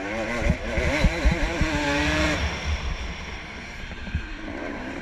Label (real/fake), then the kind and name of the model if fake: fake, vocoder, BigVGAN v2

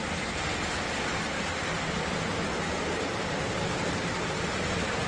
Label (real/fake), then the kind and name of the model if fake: real